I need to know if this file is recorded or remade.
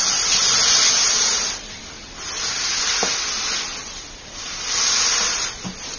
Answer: recorded